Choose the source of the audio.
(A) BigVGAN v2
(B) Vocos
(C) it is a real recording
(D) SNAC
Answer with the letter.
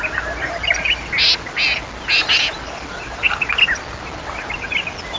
C